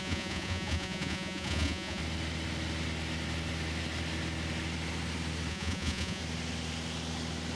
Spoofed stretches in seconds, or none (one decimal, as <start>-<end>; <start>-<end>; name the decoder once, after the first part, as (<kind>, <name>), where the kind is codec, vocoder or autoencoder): 0.0-2.0 (vocoder, Vocos); 5.5-6.2